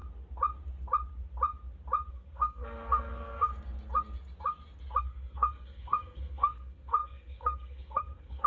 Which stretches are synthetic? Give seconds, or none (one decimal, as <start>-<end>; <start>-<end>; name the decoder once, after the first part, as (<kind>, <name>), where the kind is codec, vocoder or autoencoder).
2.1-3.5 (codec, SNAC); 5.0-8.5